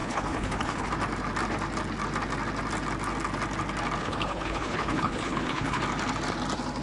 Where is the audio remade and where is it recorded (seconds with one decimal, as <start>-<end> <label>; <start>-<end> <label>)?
0.0-0.9 remade; 0.9-4.0 recorded; 4.0-5.8 remade; 5.8-6.8 recorded